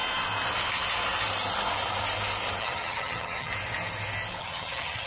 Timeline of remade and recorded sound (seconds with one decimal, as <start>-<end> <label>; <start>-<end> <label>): 0.0-2.6 recorded; 2.6-3.5 remade; 3.5-4.4 recorded; 4.4-5.1 remade